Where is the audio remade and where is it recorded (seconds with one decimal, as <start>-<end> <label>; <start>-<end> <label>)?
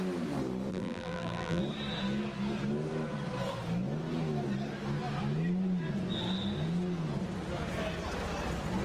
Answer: 0.0-0.7 recorded; 0.7-1.6 remade; 1.6-8.8 recorded